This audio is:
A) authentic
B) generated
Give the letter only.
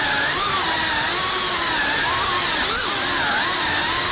A